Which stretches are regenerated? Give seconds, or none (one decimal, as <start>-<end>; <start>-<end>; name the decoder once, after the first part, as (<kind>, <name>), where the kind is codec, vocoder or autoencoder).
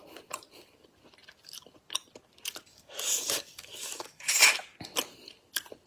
2.7-4.3 (codec, DAC)